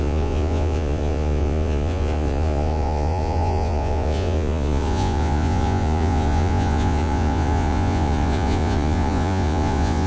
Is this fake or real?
fake